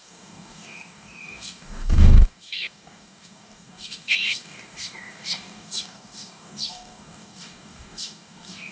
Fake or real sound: fake